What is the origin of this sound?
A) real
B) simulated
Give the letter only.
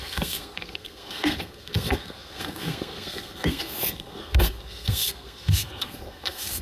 B